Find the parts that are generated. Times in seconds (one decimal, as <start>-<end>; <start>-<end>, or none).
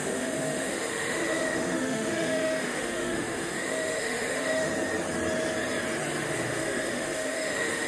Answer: 0.0-4.7; 6.2-7.9